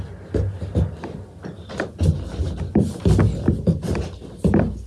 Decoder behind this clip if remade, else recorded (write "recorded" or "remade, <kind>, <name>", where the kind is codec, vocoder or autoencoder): recorded